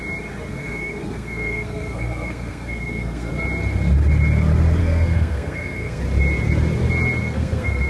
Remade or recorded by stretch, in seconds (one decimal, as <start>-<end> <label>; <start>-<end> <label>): 0.0-0.5 recorded; 0.5-3.3 remade; 3.3-4.8 recorded; 4.8-6.0 remade; 6.0-7.2 recorded; 7.2-7.9 remade

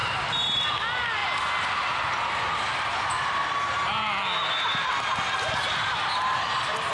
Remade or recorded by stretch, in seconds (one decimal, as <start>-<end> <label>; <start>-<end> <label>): 0.0-6.9 recorded

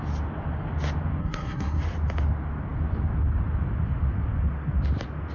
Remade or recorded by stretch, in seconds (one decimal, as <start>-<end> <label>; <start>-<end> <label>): 0.0-1.2 recorded; 1.2-1.8 remade; 1.8-5.3 recorded

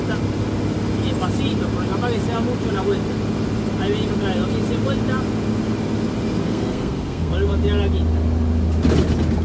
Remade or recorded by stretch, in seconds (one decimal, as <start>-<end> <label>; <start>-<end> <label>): 0.0-6.4 recorded; 6.4-7.3 remade; 7.3-9.4 recorded

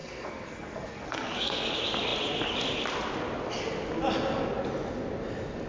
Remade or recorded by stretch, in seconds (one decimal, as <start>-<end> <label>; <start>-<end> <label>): 0.0-1.7 remade; 1.7-5.7 recorded